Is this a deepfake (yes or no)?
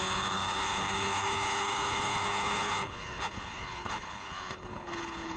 yes